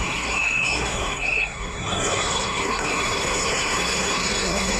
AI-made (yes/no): yes